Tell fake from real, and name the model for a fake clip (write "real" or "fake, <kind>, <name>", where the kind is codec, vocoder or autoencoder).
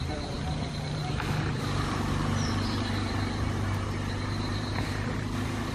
fake, vocoder, BigVGAN v2